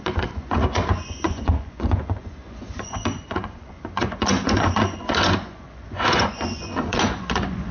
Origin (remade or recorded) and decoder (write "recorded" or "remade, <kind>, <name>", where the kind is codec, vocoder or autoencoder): remade, vocoder, Vocos